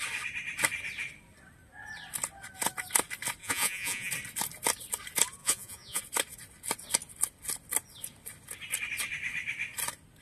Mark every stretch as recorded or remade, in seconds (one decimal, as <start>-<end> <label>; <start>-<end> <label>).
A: 0.0-3.4 recorded; 3.4-4.1 remade; 4.1-5.4 recorded; 5.4-6.0 remade; 6.0-10.2 recorded